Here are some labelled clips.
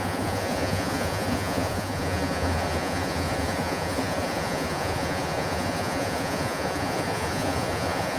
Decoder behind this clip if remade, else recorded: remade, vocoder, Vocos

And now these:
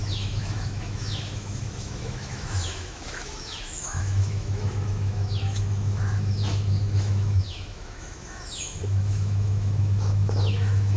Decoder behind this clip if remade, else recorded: remade, autoencoder, DAC-VAE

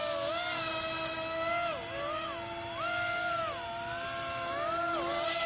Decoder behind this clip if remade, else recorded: recorded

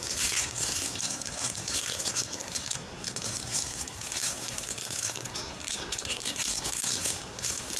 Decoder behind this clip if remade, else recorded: remade, codec, SNAC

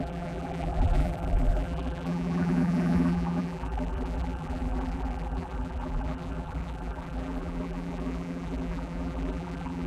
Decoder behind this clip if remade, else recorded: remade, vocoder, BigVGAN v2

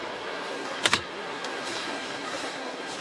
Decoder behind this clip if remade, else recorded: remade, codec, SNAC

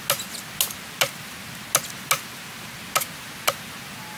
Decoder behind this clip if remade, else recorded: recorded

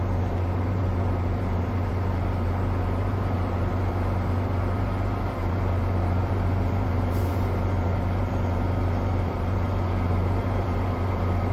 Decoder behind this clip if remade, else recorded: remade, vocoder, BigVGAN v2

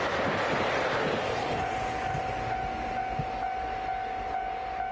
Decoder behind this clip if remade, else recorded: recorded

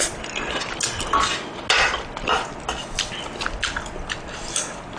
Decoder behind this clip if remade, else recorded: recorded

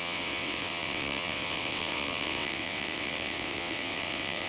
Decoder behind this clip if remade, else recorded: remade, vocoder, WaveNeXt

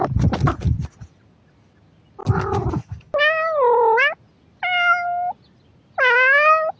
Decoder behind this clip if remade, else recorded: recorded